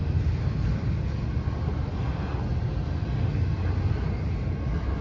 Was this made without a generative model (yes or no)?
yes